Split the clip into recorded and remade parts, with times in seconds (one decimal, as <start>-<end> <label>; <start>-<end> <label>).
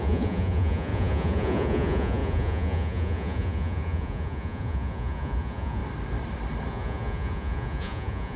0.0-5.8 remade; 5.8-6.7 recorded; 6.7-8.4 remade